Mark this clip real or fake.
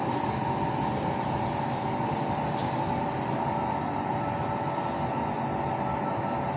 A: real